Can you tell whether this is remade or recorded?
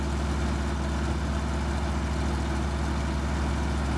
recorded